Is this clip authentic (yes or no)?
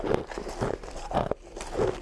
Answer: no